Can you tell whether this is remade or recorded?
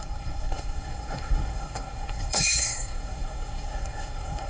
remade